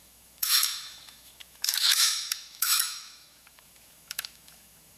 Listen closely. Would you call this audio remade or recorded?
remade